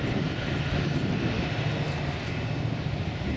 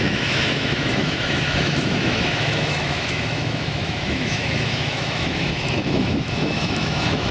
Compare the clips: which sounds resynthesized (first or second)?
second